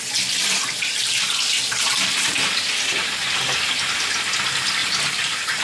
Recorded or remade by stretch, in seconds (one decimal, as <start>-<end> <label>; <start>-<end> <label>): 0.0-0.9 recorded; 0.9-2.9 remade; 2.9-4.8 recorded; 4.8-5.6 remade